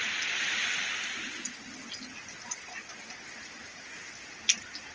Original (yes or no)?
yes